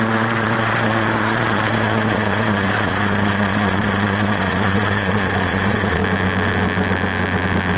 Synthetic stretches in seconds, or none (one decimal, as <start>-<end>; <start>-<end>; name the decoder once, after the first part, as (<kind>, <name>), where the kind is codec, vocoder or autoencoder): 0.0-6.0 (vocoder, Vocos)

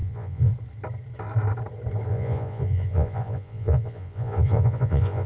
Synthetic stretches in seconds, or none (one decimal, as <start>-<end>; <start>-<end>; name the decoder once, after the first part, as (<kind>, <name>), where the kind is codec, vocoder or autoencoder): 0.0-0.5 (vocoder, Vocos); 2.1-5.3